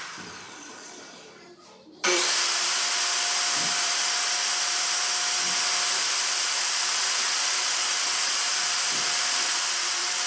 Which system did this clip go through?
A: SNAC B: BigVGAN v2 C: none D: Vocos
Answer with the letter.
B